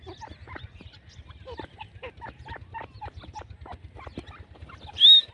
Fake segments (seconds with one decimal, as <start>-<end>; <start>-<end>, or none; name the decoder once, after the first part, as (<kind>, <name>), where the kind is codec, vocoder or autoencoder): none